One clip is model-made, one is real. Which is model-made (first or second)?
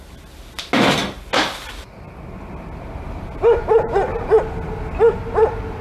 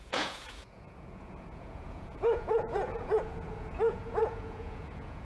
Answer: second